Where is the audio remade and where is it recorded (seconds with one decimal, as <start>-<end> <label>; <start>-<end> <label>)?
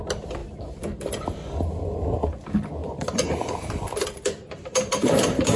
0.0-2.8 recorded; 2.8-5.6 remade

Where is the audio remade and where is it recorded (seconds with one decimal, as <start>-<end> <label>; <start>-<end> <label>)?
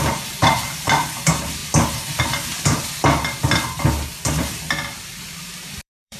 0.0-1.6 remade; 1.6-5.0 recorded; 5.0-6.2 remade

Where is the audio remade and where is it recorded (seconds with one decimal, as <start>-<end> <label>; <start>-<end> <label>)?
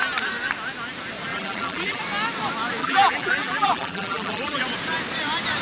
0.0-1.3 recorded; 1.3-2.0 remade; 2.0-2.8 recorded; 2.8-4.6 remade; 4.6-5.6 recorded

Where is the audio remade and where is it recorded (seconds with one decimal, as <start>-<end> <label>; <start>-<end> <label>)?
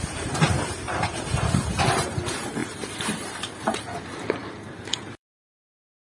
0.0-6.2 remade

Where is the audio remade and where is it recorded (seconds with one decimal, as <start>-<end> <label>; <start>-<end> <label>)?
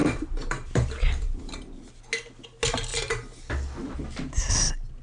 0.0-2.0 remade; 2.0-5.0 recorded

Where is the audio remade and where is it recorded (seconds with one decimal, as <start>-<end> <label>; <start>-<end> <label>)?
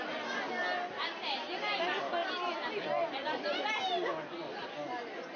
0.0-5.4 recorded